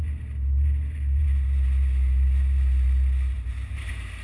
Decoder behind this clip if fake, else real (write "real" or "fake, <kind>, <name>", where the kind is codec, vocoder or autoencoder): fake, vocoder, BigVGAN v2